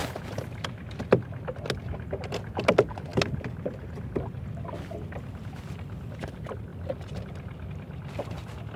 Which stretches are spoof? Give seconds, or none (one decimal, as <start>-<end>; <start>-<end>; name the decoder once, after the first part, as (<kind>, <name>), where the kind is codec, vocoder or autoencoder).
none